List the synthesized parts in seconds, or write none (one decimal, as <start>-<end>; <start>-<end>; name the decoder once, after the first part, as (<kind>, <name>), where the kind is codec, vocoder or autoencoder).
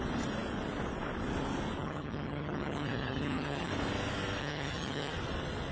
1.8-3.7 (vocoder, HiFi-GAN); 4.4-5.1